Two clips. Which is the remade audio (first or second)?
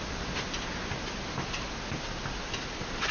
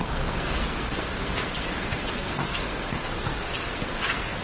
second